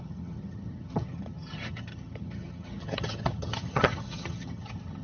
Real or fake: fake